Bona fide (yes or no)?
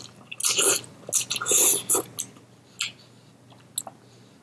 yes